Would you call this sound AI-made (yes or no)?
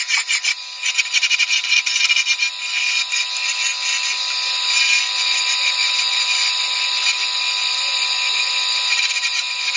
no